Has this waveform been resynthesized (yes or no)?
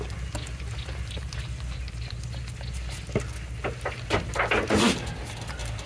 no